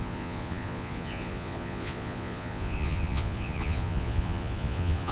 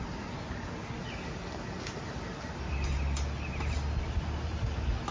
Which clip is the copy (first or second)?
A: first